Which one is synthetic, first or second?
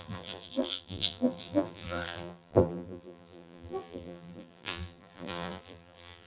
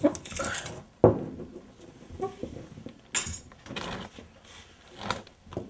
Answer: first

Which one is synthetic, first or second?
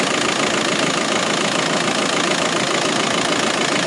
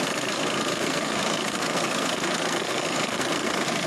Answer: second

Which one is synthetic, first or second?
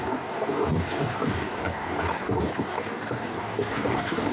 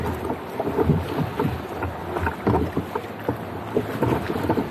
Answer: first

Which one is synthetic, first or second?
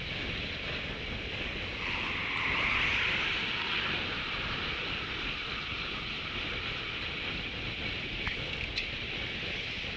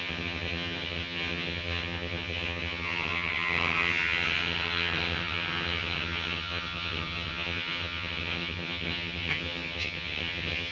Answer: second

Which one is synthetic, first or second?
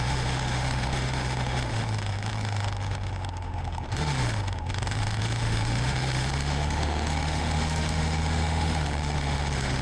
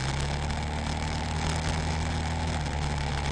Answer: first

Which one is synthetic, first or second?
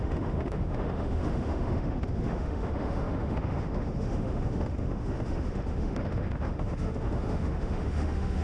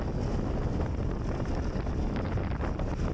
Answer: first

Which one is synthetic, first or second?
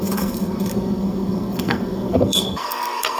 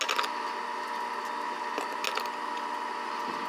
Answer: first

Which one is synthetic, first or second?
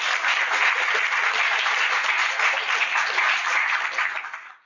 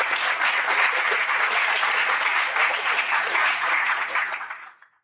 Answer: second